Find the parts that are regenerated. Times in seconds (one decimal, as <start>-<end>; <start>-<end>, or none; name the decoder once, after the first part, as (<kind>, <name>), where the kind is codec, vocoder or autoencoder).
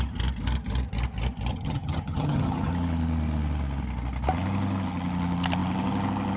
1.5-2.7 (vocoder, HiFi-GAN)